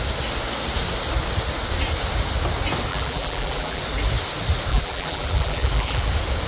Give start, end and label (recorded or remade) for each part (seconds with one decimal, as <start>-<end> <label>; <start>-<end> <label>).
0.0-2.9 recorded; 2.9-3.8 remade; 3.8-4.7 recorded; 4.7-6.0 remade; 6.0-6.5 recorded